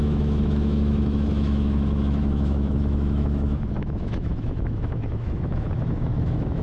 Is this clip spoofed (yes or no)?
yes